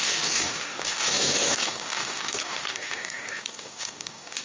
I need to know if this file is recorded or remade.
remade